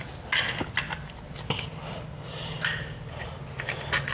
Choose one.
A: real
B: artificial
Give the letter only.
A